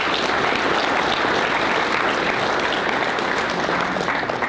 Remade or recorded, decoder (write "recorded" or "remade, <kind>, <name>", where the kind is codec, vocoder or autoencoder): recorded